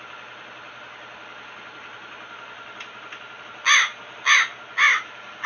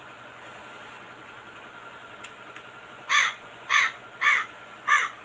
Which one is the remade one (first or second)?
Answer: second